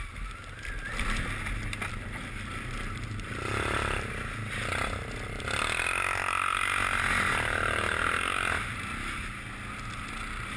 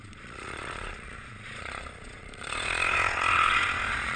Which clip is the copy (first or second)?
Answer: second